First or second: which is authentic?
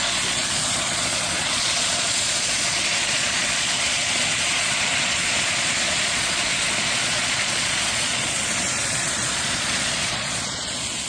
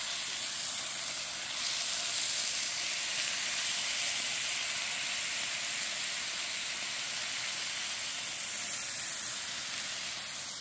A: second